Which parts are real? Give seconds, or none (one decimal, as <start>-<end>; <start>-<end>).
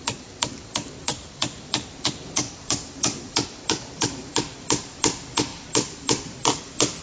none